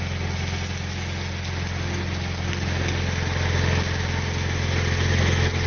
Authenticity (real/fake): real